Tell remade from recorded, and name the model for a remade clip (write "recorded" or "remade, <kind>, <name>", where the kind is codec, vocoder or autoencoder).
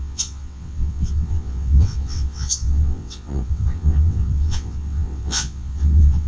remade, vocoder, WaveNeXt